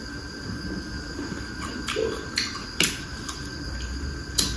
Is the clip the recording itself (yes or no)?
yes